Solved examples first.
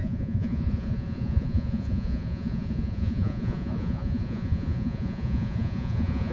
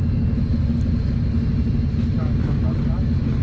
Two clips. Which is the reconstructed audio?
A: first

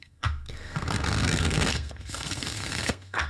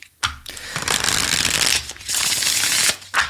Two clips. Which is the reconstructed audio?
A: first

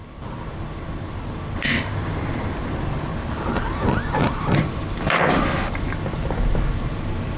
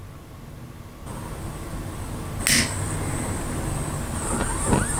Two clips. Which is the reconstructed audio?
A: first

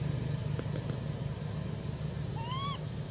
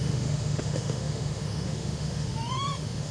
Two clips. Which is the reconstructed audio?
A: second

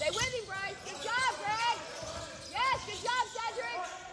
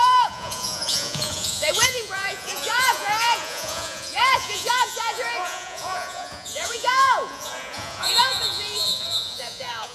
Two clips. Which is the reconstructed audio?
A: second